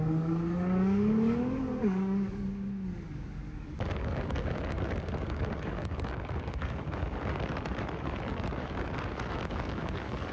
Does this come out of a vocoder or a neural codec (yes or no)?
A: yes